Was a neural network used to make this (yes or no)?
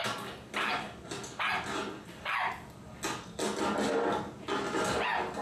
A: no